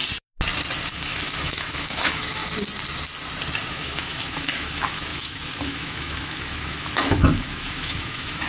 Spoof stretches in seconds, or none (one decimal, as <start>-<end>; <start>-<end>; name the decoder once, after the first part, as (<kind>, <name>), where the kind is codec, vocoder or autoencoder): 0.9-2.4 (autoencoder, DAC-VAE); 3.7-8.5